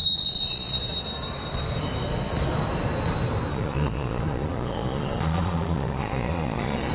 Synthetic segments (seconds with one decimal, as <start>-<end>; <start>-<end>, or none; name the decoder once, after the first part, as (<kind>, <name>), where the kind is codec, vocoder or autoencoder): 0.0-0.8 (vocoder, Vocos); 3.5-6.9